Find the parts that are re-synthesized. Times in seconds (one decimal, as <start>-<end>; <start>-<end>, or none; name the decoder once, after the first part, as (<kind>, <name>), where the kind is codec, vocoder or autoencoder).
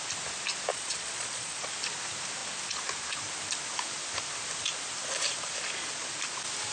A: 0.7-1.6 (vocoder, Vocos)